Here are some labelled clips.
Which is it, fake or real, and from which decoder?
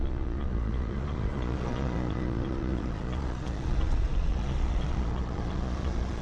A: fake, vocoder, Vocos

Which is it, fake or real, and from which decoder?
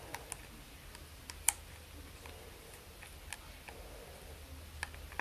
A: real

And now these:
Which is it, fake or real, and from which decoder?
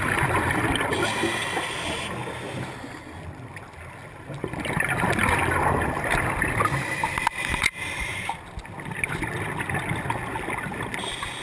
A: real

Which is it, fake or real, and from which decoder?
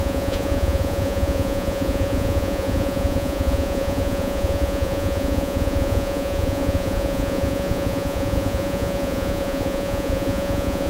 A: fake, vocoder, Vocos